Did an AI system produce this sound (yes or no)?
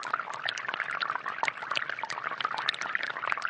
no